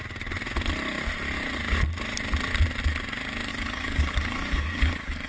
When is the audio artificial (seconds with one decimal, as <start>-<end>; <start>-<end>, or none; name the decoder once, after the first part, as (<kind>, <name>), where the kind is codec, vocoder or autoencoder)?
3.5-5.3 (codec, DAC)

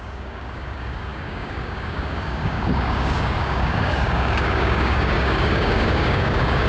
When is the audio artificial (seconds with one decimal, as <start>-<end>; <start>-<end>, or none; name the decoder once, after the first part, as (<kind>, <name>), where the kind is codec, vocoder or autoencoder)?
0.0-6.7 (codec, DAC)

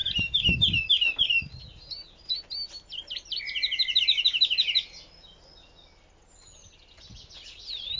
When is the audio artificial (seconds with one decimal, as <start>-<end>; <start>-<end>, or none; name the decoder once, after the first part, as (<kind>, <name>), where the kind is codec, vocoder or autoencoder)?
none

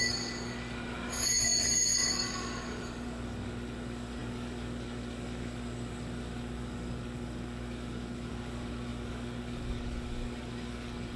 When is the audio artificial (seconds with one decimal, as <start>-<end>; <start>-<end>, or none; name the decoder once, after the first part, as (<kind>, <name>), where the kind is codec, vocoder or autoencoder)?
0.0-11.2 (codec, DAC)

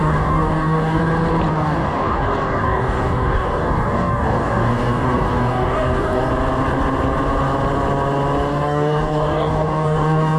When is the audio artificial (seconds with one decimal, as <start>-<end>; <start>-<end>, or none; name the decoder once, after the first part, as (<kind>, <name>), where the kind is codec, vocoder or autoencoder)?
0.0-1.0 (codec, DAC); 1.5-6.3; 8.5-10.4

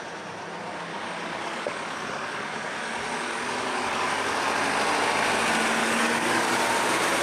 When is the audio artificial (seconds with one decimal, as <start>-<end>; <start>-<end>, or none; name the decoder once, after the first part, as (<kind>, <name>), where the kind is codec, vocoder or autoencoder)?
0.9-4.4 (codec, DAC); 5.8-6.4

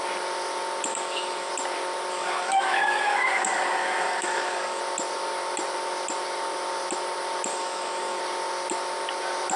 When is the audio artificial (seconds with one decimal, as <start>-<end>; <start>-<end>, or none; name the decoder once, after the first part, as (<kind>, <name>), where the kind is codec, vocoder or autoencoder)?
0.9-1.5 (codec, DAC); 2.1-4.8; 7.5-8.2

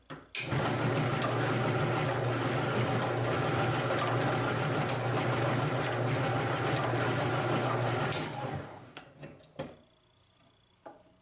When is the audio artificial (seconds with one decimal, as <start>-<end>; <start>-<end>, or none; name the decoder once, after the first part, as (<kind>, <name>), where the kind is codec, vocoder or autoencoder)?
8.4-9.0 (codec, DAC)